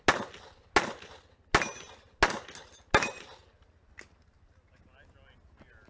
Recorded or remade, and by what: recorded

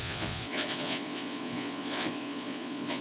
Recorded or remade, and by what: remade, vocoder, Vocos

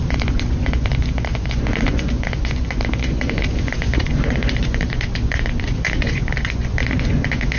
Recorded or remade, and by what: remade, vocoder, Vocos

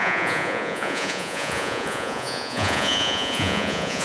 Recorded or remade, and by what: remade, vocoder, Vocos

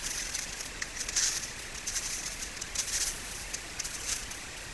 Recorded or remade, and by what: remade, vocoder, Vocos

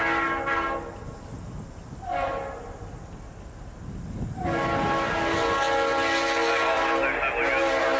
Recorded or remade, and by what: recorded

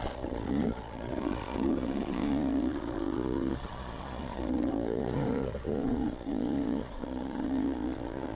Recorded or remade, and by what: remade, vocoder, Vocos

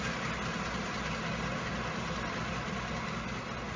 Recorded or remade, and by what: recorded